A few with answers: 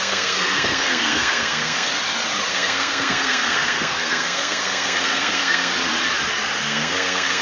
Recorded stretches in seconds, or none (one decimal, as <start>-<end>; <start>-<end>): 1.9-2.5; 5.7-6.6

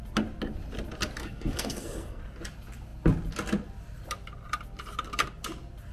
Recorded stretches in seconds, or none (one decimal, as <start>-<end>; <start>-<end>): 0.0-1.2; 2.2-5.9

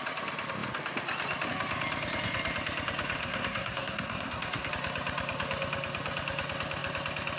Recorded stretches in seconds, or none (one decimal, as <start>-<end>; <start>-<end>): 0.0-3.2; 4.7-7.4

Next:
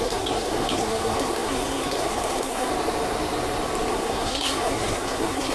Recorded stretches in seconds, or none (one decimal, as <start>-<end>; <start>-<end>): 2.7-3.9